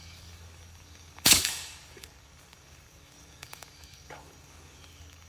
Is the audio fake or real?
fake